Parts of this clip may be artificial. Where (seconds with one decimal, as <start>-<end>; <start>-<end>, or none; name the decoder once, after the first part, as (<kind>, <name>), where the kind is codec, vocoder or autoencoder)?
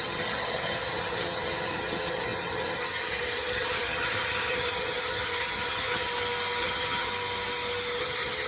0.0-6.1 (vocoder, HiFi-GAN); 6.6-7.1; 8.0-8.5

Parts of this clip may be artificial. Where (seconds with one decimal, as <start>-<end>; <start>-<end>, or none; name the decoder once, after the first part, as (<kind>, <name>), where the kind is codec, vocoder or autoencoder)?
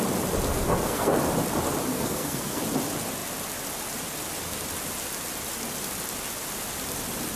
0.5-1.2 (codec, SNAC); 1.9-2.6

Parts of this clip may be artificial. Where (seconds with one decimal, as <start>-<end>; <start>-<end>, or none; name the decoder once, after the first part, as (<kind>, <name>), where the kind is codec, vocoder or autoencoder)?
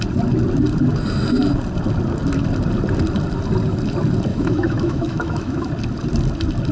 4.3-5.7 (autoencoder, DAC-VAE)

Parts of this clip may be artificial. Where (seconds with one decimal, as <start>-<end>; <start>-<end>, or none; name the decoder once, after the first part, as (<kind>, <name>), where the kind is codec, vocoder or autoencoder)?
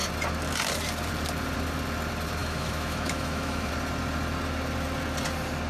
2.4-3.7 (autoencoder, DAC-VAE)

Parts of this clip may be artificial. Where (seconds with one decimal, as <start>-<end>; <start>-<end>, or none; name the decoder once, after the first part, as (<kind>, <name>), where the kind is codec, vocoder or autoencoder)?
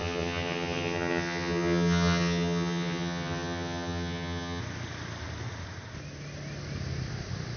0.0-4.6 (vocoder, HiFi-GAN)